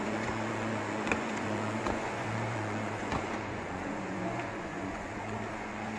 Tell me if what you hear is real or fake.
fake